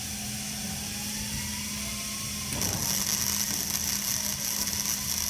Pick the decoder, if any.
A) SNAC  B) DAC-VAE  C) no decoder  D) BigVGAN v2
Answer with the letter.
C